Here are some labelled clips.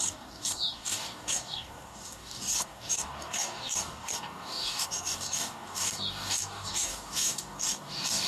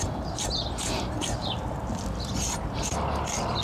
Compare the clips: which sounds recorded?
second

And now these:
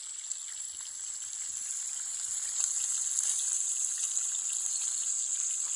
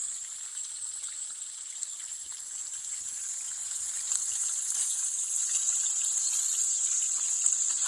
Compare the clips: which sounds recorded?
first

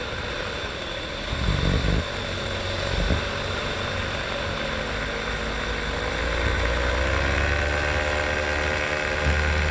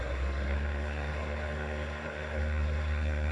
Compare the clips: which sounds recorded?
first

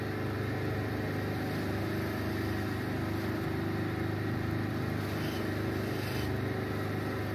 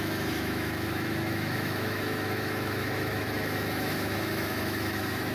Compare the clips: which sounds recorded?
first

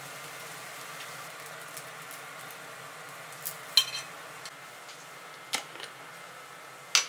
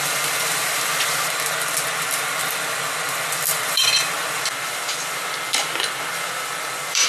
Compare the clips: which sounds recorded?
first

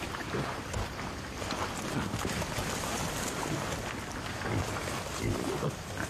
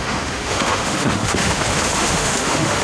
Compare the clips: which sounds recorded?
first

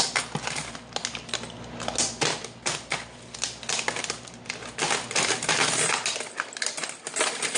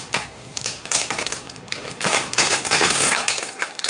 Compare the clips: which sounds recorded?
first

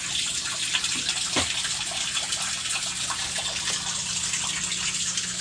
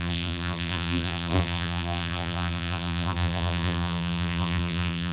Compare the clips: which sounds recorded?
first